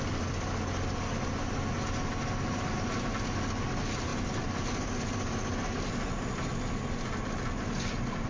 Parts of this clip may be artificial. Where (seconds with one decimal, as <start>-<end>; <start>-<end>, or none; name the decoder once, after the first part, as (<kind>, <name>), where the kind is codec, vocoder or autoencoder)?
none